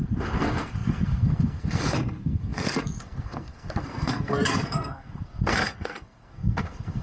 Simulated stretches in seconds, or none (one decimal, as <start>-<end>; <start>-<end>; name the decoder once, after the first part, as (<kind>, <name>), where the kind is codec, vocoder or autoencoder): 0.0-7.0 (codec, SNAC)